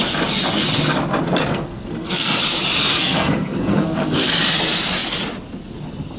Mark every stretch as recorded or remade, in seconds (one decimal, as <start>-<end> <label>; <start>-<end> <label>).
0.0-1.5 recorded; 1.5-2.4 remade; 2.4-2.9 recorded; 2.9-4.3 remade; 4.3-6.2 recorded